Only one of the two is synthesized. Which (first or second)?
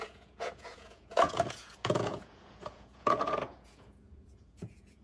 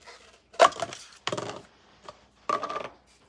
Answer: first